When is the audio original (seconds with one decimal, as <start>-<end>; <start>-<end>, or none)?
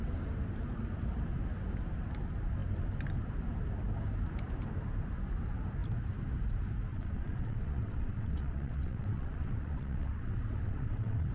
0.0-6.9